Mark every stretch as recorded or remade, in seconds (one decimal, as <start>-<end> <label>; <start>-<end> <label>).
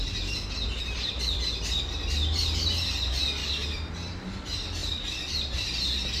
0.0-6.2 recorded